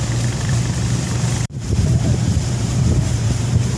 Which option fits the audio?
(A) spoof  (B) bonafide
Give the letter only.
A